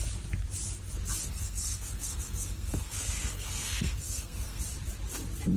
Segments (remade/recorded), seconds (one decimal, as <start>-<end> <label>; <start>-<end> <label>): 0.0-1.2 recorded; 1.2-4.6 remade; 4.6-5.6 recorded

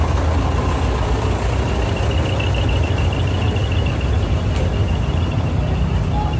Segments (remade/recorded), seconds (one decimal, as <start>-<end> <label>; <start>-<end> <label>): 0.0-6.4 recorded

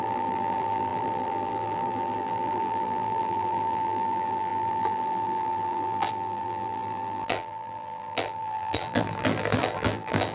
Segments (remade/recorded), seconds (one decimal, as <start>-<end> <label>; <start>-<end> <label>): 0.0-10.3 remade

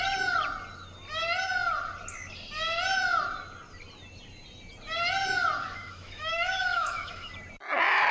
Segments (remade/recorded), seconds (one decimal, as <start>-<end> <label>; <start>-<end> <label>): 0.0-5.6 recorded; 5.6-7.3 remade; 7.3-8.1 recorded

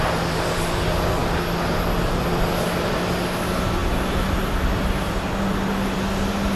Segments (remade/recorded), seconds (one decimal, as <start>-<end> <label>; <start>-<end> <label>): 0.0-6.6 recorded

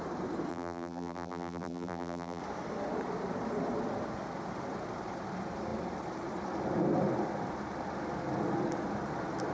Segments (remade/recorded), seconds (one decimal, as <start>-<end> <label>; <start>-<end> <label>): 0.0-0.5 recorded; 0.5-2.4 remade; 2.4-9.5 recorded

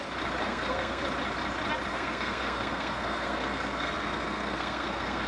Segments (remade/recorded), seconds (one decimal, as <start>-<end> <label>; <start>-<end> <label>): 0.0-0.4 recorded; 0.4-1.0 remade; 1.0-1.9 recorded; 1.9-5.3 remade